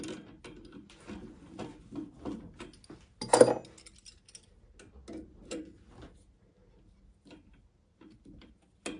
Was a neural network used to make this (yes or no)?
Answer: no